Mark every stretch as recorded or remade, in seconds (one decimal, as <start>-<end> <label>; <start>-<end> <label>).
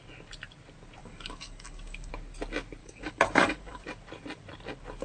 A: 0.0-1.0 recorded; 1.0-2.1 remade; 2.1-2.8 recorded; 2.8-3.8 remade; 3.8-5.0 recorded